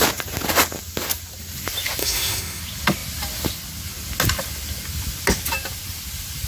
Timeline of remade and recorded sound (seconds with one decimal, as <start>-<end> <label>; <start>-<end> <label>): 0.0-2.0 recorded; 2.0-2.6 remade; 2.6-6.5 recorded